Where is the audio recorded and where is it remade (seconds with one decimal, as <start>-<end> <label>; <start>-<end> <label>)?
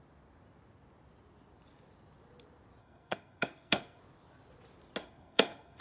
0.0-2.8 recorded; 2.8-4.0 remade; 4.0-5.0 recorded; 5.0-5.8 remade